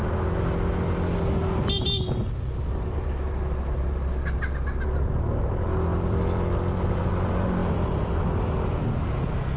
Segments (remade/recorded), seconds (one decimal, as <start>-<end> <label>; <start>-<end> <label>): 0.0-5.9 recorded; 5.9-7.0 remade; 7.0-7.6 recorded; 7.6-8.4 remade; 8.4-9.6 recorded